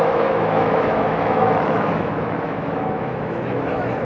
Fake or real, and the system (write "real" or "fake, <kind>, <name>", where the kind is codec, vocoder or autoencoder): fake, autoencoder, DAC-VAE